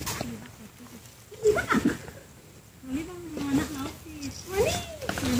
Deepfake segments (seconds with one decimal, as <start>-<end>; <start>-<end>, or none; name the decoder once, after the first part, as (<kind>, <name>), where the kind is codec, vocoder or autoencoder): none

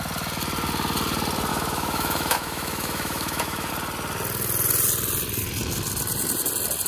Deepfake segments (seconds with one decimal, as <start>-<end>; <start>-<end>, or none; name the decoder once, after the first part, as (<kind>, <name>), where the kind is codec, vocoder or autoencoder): 1.5-3.7 (autoencoder, DAC-VAE)